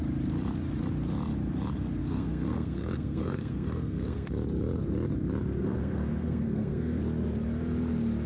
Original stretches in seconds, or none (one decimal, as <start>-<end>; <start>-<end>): 0.0-2.0; 4.3-5.6; 7.0-8.3